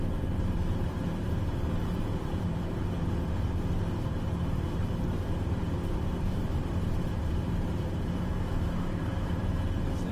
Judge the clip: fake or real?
fake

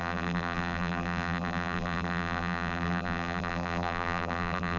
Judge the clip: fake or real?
fake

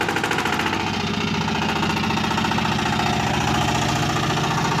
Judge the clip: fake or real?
real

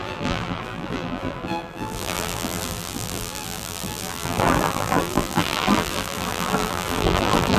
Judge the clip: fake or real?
fake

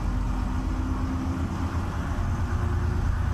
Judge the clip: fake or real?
real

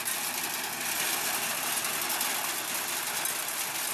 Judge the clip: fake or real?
real